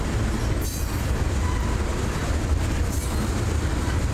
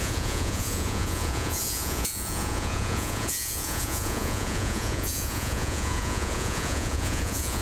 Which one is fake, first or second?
second